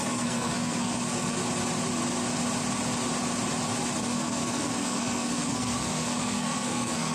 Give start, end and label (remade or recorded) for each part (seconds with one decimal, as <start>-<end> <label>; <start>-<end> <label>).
0.0-1.4 remade; 1.4-4.0 recorded; 4.0-7.1 remade